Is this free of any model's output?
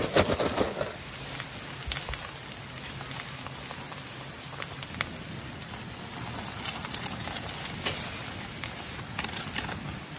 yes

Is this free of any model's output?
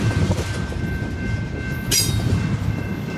yes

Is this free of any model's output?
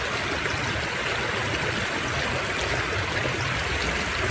yes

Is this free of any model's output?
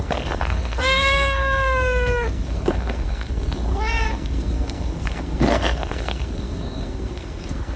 no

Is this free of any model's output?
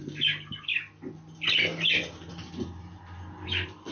yes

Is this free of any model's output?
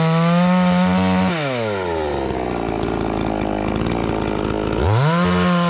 yes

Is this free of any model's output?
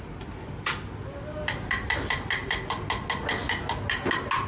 yes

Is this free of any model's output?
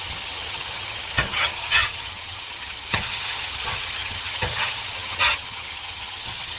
no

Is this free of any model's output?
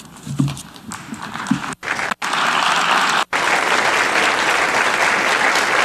yes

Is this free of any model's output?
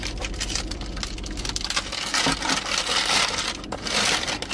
yes